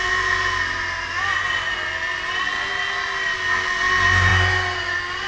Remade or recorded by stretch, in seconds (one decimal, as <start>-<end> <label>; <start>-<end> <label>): 0.0-5.3 recorded